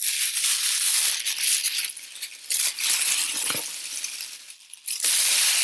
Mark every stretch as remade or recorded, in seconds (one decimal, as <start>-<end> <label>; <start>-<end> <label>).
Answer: 0.0-5.6 recorded